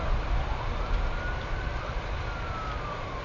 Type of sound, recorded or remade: recorded